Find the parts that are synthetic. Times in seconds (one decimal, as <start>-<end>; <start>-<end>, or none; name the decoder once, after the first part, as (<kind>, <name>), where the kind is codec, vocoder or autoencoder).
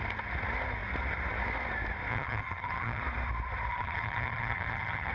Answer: 2.1-3.0 (vocoder, HiFi-GAN); 3.7-5.1